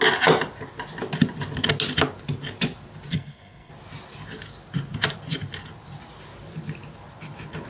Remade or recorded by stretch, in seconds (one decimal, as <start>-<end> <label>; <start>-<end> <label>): 0.0-3.1 recorded; 3.1-3.7 remade; 3.7-7.7 recorded